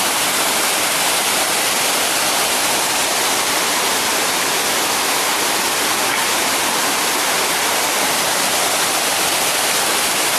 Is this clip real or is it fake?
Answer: real